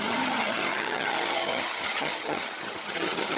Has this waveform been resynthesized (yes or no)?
yes